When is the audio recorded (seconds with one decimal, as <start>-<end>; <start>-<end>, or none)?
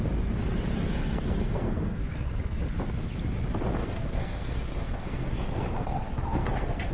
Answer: 0.0-0.9; 2.7-3.8